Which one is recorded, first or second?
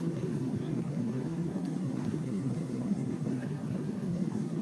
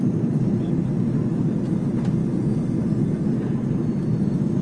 second